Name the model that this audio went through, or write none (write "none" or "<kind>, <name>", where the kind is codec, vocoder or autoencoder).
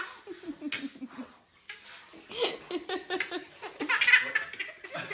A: none